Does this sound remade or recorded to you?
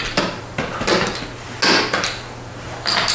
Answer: recorded